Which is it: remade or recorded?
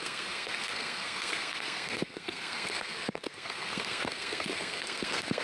remade